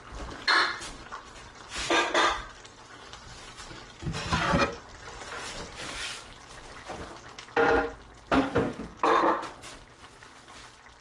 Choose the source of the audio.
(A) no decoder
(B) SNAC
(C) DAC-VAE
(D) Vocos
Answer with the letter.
A